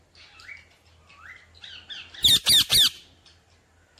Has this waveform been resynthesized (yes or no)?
no